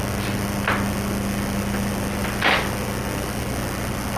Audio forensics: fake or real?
real